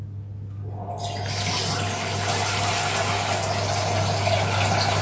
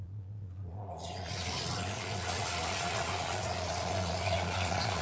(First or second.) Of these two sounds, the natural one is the first